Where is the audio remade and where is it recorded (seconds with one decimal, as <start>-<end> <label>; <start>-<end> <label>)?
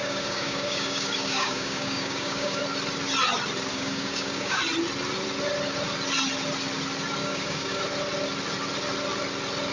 0.0-2.6 remade; 2.6-3.7 recorded; 3.7-4.6 remade; 4.6-7.2 recorded; 7.2-7.8 remade; 7.8-9.7 recorded